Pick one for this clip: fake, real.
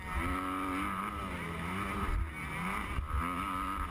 real